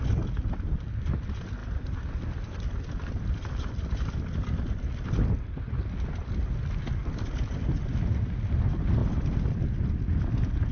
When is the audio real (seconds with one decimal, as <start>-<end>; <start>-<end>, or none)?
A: 0.0-10.7